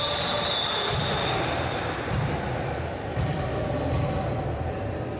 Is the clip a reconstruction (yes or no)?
no